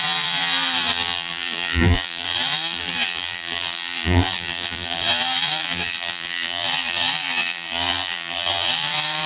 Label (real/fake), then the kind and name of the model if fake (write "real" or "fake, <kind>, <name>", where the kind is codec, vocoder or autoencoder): fake, vocoder, BigVGAN v2